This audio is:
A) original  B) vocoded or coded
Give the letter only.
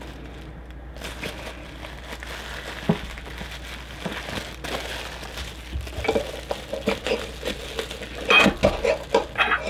A